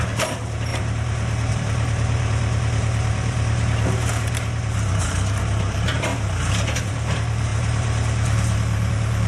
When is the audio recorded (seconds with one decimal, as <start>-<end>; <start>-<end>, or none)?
6.1-6.8